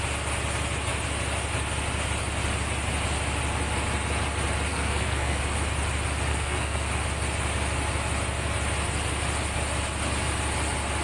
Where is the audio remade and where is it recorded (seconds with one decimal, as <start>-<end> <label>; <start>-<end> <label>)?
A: 0.0-4.7 recorded; 4.7-5.4 remade; 5.4-6.3 recorded; 6.3-6.9 remade; 6.9-11.0 recorded